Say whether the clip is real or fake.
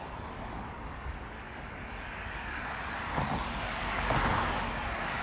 fake